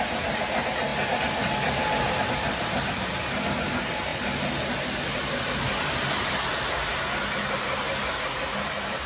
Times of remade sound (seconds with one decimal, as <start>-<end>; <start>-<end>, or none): none